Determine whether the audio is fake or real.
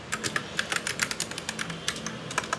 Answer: real